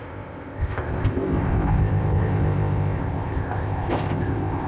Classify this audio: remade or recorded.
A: remade